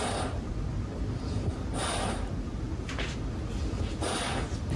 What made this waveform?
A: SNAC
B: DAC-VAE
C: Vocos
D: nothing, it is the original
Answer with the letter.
D